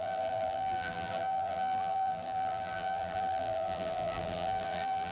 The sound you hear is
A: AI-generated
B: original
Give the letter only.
A